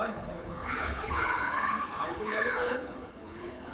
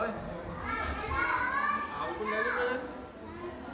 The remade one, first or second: first